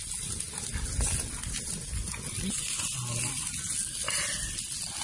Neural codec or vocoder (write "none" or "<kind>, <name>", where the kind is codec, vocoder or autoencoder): none